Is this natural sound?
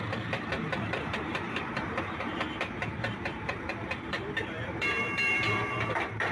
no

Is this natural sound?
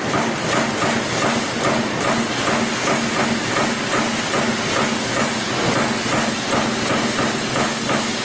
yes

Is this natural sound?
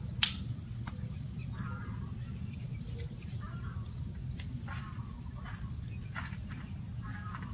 yes